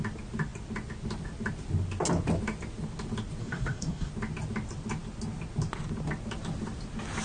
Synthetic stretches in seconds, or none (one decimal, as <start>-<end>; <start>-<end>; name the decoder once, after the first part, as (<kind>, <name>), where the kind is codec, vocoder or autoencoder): 3.4-4.1 (codec, SNAC)